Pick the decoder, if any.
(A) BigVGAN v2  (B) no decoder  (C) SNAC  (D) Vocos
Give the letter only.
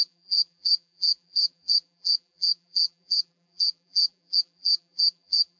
A